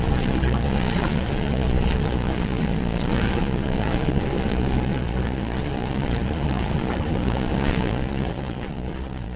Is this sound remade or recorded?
remade